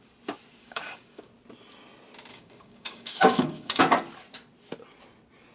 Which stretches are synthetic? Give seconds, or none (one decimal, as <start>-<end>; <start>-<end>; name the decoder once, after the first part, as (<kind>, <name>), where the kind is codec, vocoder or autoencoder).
0.6-1.2 (codec, DAC); 2.3-3.8